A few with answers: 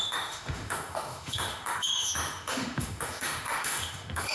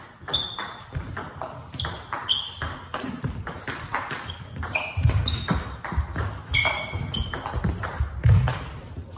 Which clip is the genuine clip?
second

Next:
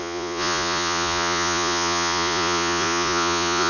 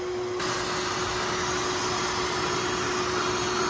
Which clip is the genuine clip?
second